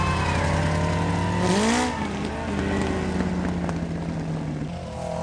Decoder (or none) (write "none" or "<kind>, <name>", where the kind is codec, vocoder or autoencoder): none